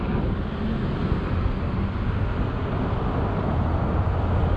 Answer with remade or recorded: recorded